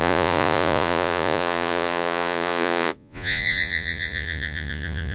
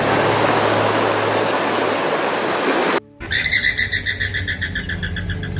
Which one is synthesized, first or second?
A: first